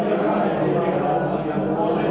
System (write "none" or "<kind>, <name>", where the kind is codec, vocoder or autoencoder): none